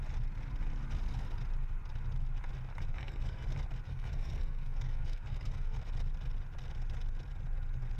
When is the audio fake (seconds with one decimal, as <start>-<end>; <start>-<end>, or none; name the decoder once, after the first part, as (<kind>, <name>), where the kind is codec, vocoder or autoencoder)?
2.9-3.5 (codec, SNAC); 3.9-5.8